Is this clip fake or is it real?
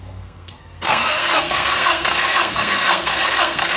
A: fake